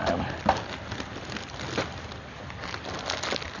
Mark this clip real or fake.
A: real